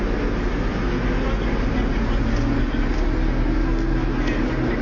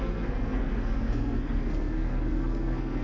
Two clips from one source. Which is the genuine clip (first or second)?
first